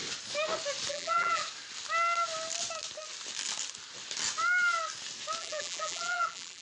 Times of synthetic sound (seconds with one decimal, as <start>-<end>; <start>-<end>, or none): 0.9-1.4; 5.4-6.6

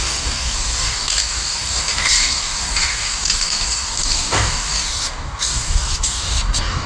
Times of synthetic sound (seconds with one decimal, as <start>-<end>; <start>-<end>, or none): 0.0-6.9

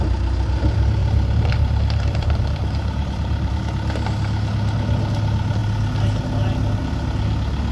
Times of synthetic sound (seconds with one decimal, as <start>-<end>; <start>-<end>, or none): 1.0-3.5

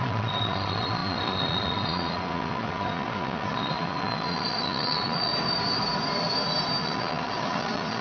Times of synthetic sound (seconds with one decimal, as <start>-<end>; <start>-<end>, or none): 0.0-5.3; 6.8-8.0

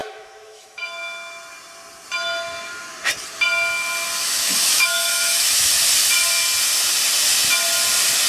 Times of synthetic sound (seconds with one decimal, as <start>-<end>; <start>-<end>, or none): 0.0-0.8; 4.2-5.7